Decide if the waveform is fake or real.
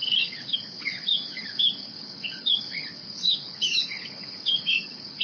fake